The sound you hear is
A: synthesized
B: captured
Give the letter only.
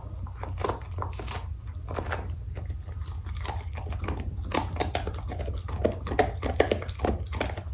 B